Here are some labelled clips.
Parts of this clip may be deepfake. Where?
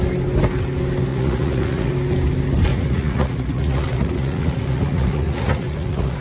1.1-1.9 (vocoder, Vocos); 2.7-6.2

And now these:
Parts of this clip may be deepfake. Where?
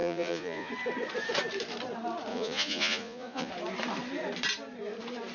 0.0-0.7 (vocoder, Vocos); 2.3-3.5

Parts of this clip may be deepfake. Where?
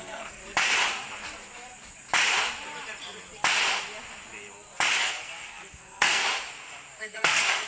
0.0-0.4 (codec, SNAC); 5.0-6.2; 7.0-7.7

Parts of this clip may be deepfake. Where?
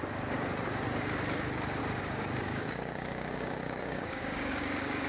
1.8-5.1 (codec, DAC)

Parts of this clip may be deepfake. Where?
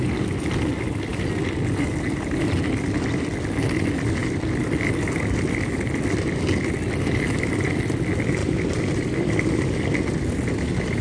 none